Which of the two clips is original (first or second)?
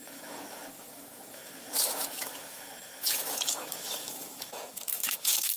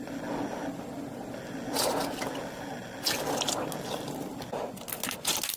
second